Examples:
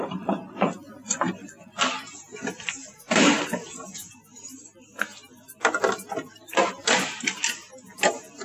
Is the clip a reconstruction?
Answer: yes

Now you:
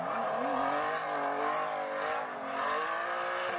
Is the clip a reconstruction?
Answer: no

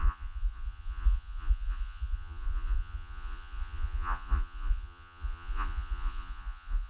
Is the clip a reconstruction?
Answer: yes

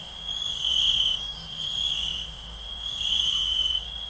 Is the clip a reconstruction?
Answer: yes